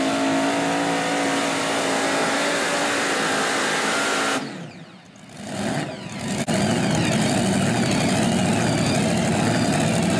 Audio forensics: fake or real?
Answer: real